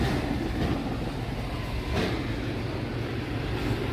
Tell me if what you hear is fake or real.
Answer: real